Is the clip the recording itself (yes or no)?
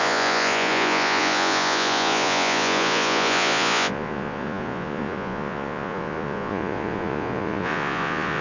no